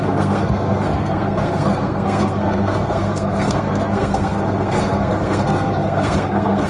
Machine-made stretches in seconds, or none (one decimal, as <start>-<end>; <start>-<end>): 0.0-6.7